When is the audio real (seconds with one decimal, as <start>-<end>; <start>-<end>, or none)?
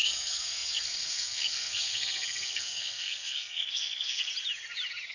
4.3-5.1